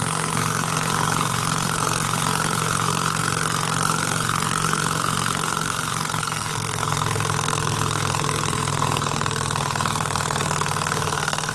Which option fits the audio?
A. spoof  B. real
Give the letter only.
A